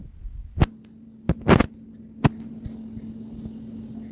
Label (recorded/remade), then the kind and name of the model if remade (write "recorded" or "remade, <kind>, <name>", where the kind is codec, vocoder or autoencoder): recorded